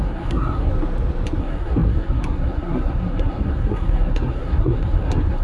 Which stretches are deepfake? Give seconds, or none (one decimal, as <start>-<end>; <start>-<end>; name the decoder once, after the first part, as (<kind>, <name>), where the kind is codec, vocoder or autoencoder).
0.0-0.7 (codec, SNAC); 1.4-5.4